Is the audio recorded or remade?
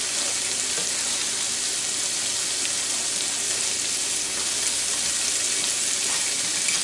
recorded